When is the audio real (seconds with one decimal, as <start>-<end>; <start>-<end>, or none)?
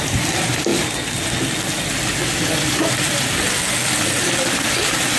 0.0-5.2